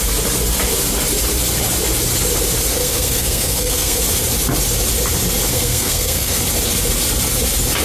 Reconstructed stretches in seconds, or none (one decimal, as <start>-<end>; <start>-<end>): 2.8-4.0; 5.5-6.4